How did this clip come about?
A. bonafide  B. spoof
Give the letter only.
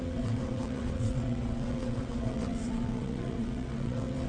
B